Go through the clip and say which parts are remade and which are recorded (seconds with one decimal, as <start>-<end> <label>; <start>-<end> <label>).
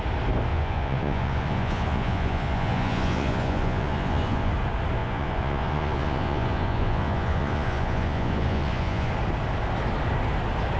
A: 0.0-0.5 recorded; 0.5-4.5 remade; 4.5-5.0 recorded; 5.0-9.1 remade; 9.1-10.8 recorded